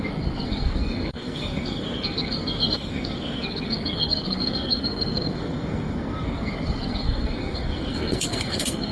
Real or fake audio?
fake